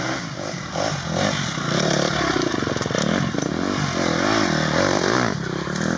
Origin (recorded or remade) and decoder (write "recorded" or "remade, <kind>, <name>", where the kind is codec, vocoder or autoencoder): recorded